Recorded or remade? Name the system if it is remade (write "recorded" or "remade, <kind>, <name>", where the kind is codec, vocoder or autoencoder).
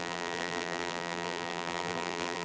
remade, vocoder, BigVGAN v2